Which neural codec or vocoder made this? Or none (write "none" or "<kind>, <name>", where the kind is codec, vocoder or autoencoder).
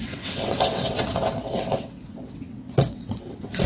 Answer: vocoder, WaveNeXt